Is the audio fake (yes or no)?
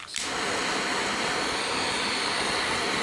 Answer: no